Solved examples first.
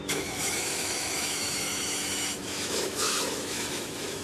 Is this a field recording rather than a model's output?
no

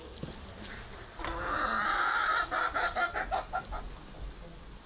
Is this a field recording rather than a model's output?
yes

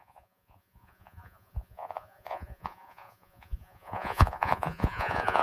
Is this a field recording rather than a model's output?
no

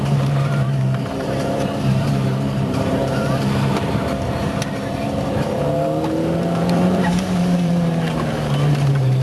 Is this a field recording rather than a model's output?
no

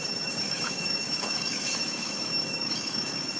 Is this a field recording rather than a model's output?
no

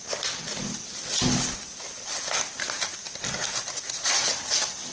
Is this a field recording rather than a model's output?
yes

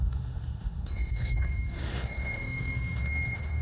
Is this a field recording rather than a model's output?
no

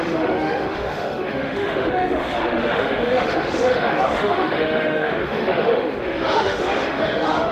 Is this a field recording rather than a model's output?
no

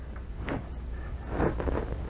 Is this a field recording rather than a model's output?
yes